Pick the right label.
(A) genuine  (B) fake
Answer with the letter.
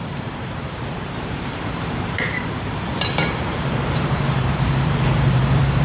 B